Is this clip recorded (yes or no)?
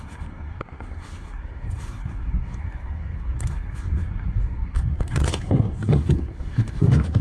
no